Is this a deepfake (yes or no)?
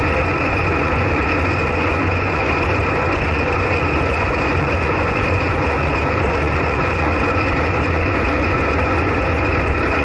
yes